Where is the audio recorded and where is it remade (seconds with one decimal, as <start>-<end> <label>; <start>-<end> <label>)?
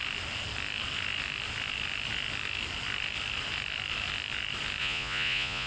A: 0.0-4.8 recorded; 4.8-5.7 remade